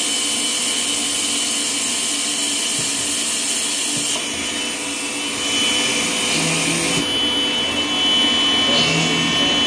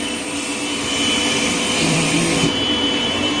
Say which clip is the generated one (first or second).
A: second